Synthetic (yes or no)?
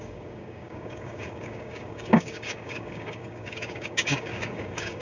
yes